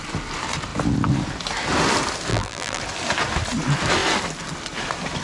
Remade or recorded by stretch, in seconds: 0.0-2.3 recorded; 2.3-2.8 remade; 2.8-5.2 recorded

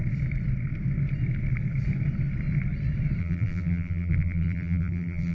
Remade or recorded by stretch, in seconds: 0.0-3.2 recorded; 3.2-5.3 remade

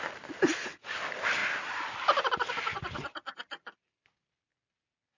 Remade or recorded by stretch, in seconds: 0.0-5.2 recorded

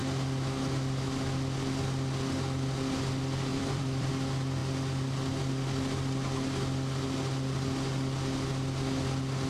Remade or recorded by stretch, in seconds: 0.0-3.5 recorded; 3.5-4.1 remade; 4.1-9.5 recorded

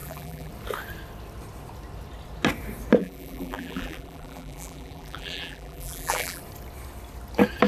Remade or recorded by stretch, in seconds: 0.0-0.5 remade; 0.5-3.0 recorded; 3.0-6.4 remade; 6.4-7.7 recorded

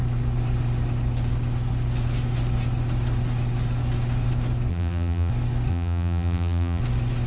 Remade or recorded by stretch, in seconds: 0.0-4.7 recorded; 4.7-5.3 remade; 5.3-5.7 recorded; 5.7-6.8 remade; 6.8-7.3 recorded

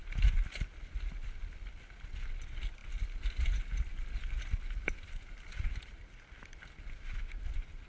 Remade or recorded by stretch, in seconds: 0.0-1.1 remade; 1.1-7.9 recorded

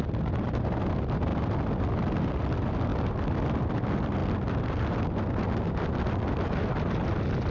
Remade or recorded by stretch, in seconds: 0.0-1.3 remade; 1.3-2.4 recorded; 2.4-4.2 remade; 4.2-7.5 recorded